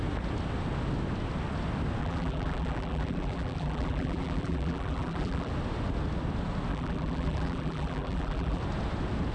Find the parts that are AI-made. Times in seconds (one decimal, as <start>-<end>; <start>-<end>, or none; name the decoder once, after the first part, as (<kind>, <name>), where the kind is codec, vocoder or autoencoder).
2.0-5.5 (vocoder, BigVGAN v2); 6.7-8.6